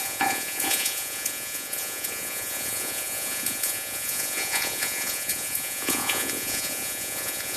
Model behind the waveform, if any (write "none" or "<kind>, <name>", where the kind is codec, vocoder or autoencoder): vocoder, Vocos